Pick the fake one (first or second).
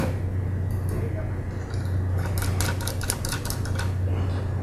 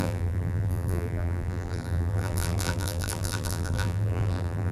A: second